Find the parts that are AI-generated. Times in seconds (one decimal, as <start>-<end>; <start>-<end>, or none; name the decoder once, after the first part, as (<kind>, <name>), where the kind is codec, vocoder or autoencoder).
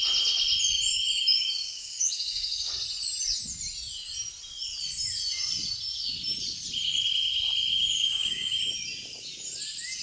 0.9-2.7 (codec, DAC); 7.7-8.6